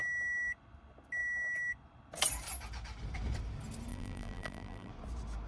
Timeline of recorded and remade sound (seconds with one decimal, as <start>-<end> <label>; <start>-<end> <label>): 0.0-3.9 recorded; 3.9-4.9 remade; 4.9-5.5 recorded